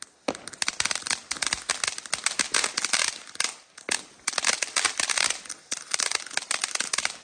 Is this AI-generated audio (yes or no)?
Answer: no